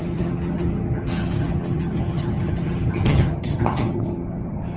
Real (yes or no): no